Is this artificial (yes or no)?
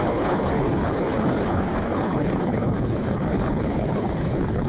yes